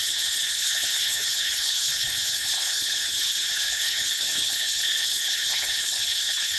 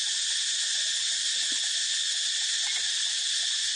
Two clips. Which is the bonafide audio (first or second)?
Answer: second